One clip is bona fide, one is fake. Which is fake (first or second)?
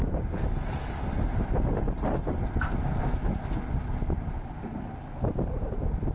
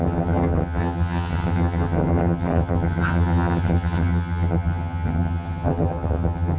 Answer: second